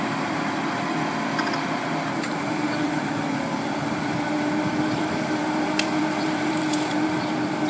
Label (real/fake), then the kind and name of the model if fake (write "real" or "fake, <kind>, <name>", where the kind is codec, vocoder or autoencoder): fake, vocoder, BigVGAN v2